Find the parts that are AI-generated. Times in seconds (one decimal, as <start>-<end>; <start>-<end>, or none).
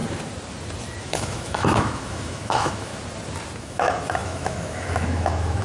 1.0-2.9; 3.6-5.6